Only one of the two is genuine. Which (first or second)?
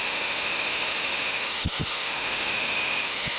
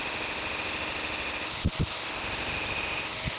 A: second